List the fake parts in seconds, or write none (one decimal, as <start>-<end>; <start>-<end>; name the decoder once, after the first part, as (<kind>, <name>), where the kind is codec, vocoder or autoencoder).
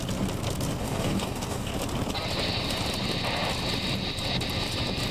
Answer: 0.8-1.7 (codec, DAC)